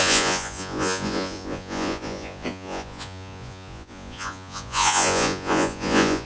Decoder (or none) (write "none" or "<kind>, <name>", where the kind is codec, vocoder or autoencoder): vocoder, Vocos